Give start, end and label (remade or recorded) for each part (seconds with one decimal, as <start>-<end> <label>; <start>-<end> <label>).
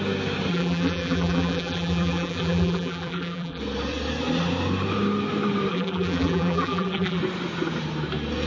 0.0-0.5 recorded; 0.5-3.6 remade; 3.6-5.7 recorded; 5.7-7.2 remade; 7.2-8.5 recorded